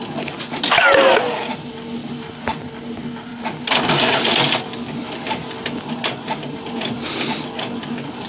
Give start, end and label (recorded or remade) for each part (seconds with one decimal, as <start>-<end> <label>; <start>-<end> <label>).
0.0-3.3 recorded; 3.3-4.3 remade; 4.3-8.3 recorded